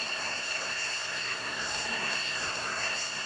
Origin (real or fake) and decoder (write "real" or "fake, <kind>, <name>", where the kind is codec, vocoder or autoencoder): fake, codec, SNAC